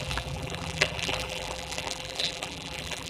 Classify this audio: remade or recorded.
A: remade